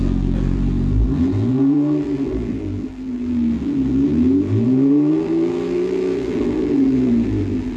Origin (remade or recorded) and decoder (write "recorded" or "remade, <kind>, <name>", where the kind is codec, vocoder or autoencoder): remade, vocoder, BigVGAN v2